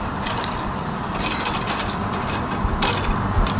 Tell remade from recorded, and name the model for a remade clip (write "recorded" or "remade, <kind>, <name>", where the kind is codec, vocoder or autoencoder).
recorded